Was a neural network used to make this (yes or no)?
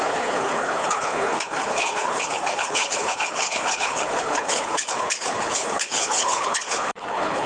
yes